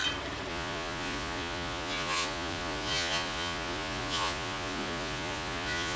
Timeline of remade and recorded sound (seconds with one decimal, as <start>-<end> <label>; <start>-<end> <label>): 0.0-0.5 recorded; 0.5-6.0 remade